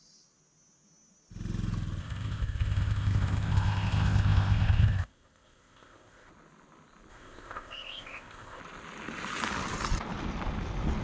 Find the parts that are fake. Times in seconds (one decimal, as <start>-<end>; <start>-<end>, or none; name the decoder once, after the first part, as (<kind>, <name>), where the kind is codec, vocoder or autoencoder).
2.0-6.3 (codec, ZipCodec); 7.1-8.6